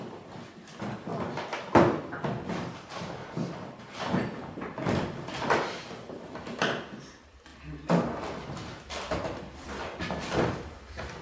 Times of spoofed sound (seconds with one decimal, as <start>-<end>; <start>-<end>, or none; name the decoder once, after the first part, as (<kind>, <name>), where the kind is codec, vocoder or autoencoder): 0.0-7.5 (vocoder, BigVGAN v2); 8.9-11.2